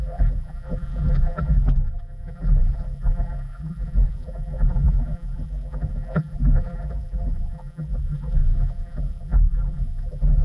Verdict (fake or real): fake